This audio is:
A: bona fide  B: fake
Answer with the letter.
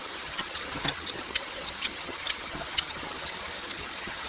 B